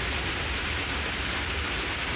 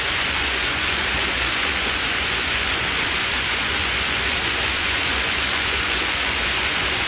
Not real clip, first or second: second